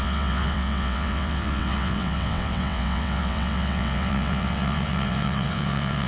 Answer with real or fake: fake